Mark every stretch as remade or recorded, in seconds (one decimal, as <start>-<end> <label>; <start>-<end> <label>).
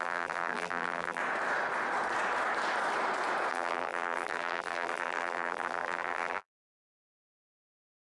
0.0-1.2 remade; 1.2-3.5 recorded; 3.5-8.1 remade